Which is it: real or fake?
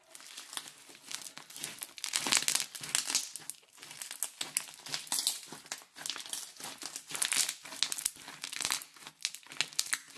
real